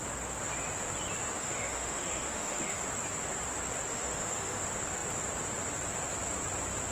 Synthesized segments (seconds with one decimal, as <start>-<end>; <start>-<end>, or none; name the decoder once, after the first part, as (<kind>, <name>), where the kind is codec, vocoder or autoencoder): 1.4-2.8 (autoencoder, DAC-VAE); 3.9-4.6